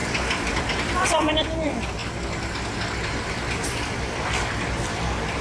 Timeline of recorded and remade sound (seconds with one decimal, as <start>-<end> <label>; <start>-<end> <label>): 0.0-0.6 recorded; 0.6-2.0 remade; 2.0-3.3 recorded; 3.3-5.4 remade